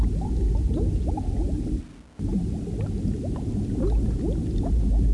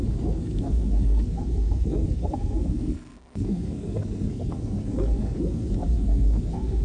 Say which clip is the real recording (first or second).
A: first